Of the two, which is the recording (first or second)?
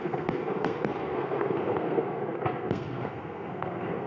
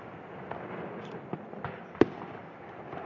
second